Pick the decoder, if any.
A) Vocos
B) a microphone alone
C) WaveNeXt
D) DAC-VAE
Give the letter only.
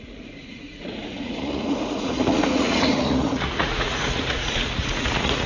A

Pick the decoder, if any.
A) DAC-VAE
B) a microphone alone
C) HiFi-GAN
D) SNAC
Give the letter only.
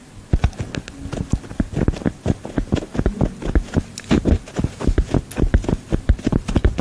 B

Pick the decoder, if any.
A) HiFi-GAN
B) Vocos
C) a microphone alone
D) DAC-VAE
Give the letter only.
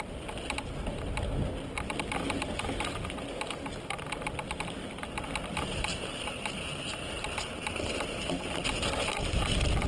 C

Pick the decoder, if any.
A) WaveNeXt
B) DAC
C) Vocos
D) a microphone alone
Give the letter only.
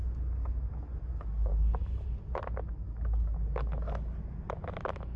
D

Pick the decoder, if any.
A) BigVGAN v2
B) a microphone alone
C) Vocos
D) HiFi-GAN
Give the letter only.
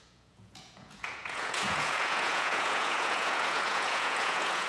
C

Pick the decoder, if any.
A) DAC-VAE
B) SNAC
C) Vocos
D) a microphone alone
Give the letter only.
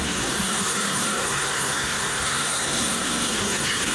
B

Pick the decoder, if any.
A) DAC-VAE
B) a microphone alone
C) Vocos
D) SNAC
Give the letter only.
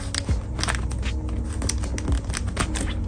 B